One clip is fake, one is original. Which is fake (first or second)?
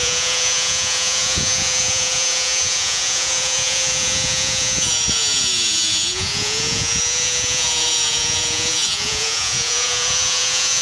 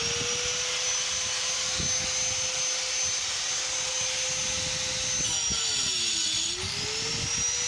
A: first